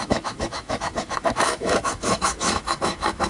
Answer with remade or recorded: remade